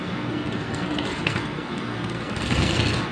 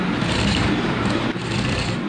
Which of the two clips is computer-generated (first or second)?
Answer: first